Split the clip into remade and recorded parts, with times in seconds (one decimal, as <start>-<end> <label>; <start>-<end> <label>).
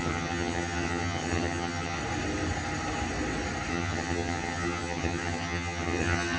0.0-2.0 remade; 2.0-3.7 recorded; 3.7-6.4 remade